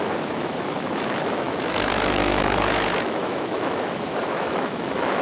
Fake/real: fake